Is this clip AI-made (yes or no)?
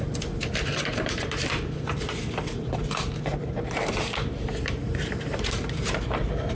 yes